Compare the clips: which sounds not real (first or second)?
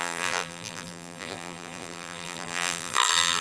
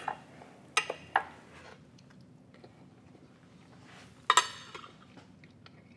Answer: first